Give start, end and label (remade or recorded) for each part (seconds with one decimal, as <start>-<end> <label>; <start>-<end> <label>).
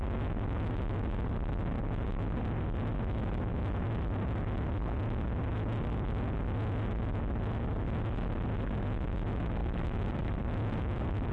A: 0.0-9.6 recorded; 9.6-11.3 remade